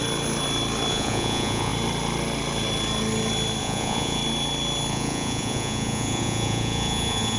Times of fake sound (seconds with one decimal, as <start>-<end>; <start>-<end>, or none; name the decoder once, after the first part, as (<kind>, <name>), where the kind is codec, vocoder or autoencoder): 0.9-1.7 (vocoder, Vocos); 3.6-4.2; 4.9-7.4